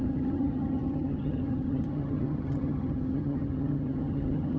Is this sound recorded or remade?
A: remade